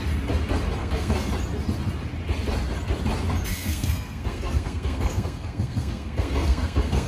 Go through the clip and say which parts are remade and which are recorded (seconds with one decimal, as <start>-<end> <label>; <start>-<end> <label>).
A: 0.0-0.8 recorded; 0.8-1.3 remade; 1.3-3.5 recorded; 3.5-7.1 remade